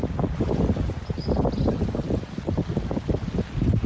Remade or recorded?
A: recorded